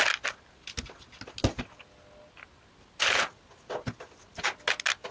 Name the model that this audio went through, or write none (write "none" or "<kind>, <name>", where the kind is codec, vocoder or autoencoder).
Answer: none